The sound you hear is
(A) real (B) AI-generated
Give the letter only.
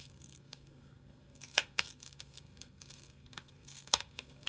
B